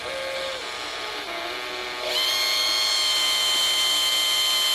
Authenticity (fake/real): real